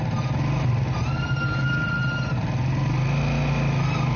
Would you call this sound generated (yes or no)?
no